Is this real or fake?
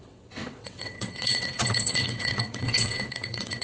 fake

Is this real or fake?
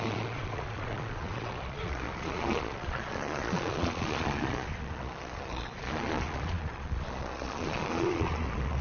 fake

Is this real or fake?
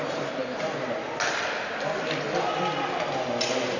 real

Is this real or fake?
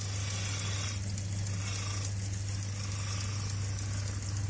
real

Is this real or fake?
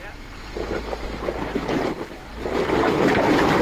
fake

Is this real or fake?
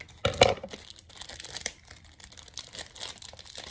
real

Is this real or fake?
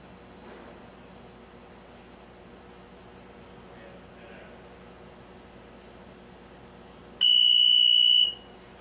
real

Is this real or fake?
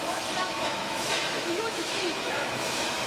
fake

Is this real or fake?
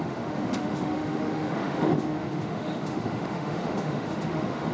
fake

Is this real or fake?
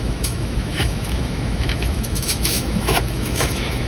fake